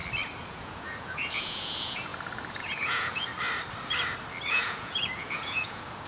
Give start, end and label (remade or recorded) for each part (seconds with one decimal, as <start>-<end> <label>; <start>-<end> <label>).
0.0-0.5 recorded; 0.5-2.1 remade; 2.1-2.6 recorded; 2.6-3.3 remade; 3.3-4.5 recorded; 4.5-6.1 remade